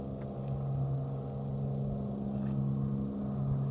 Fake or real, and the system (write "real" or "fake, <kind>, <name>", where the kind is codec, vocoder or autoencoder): real